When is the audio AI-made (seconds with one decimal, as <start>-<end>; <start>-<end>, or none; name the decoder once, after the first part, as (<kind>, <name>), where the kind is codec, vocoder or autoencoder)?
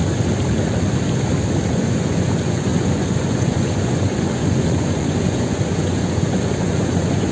1.7-7.3 (vocoder, Vocos)